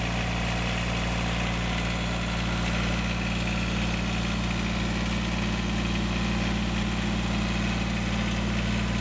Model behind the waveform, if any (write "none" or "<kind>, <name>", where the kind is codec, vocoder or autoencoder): none